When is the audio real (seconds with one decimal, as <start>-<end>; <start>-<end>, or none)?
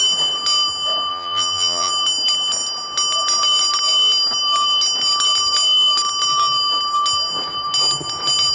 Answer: 0.0-1.1; 1.9-8.5